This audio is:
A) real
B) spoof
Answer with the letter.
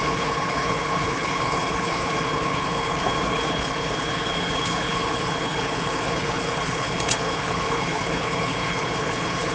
B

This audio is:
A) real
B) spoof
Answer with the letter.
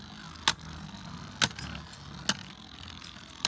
A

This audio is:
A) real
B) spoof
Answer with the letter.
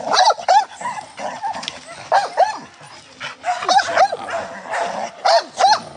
A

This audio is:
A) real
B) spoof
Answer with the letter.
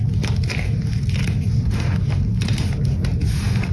A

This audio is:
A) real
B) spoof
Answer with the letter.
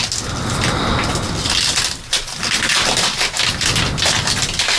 A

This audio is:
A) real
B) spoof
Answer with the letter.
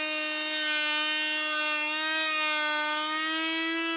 A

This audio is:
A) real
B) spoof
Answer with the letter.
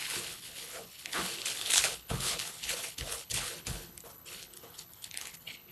B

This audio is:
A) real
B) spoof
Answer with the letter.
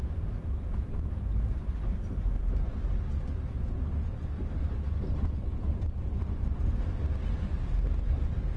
A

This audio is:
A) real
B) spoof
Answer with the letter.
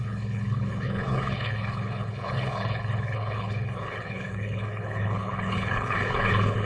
B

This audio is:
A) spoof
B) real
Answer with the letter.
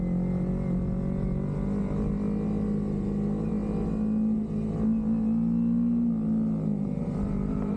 B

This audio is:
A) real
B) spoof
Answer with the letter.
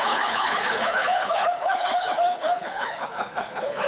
B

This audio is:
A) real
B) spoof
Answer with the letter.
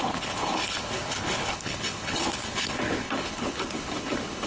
B